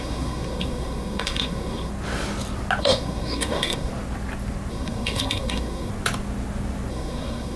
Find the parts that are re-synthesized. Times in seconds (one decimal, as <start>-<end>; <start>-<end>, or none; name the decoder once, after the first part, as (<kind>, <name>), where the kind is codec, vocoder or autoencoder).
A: 0.0-1.9 (codec, SNAC); 2.8-3.9; 4.7-5.9; 6.9-7.6